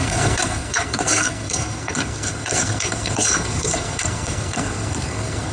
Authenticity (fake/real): fake